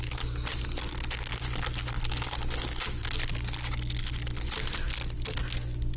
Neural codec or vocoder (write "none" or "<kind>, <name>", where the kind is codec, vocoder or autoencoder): none